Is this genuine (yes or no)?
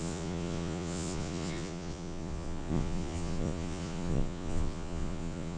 no